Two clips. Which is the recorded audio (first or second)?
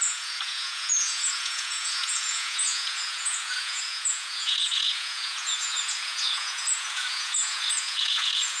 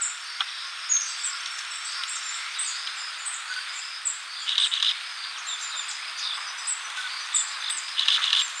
second